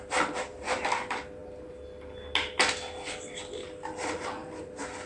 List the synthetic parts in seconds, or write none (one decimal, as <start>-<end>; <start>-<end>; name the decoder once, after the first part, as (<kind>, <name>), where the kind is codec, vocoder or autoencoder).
none